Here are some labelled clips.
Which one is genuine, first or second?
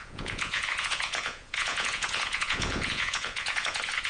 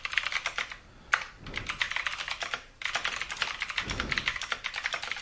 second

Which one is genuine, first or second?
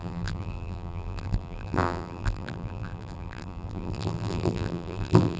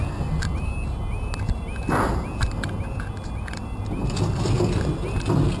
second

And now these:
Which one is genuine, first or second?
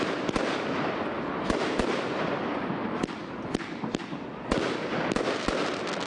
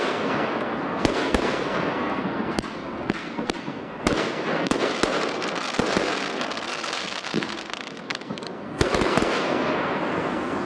first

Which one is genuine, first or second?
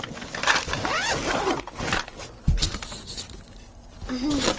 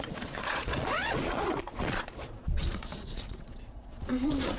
first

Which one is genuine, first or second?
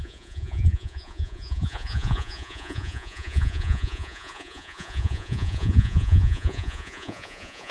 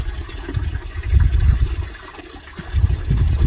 second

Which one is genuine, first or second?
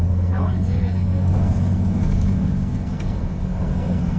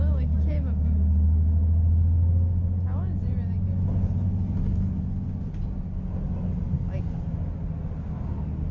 second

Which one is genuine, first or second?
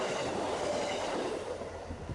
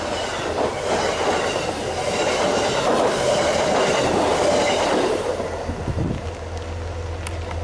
second